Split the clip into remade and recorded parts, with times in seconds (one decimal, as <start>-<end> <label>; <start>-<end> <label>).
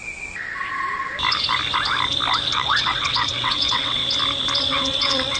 0.0-2.5 recorded; 2.5-4.0 remade; 4.0-4.6 recorded; 4.6-5.4 remade